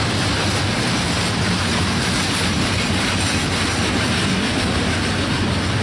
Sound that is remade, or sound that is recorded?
recorded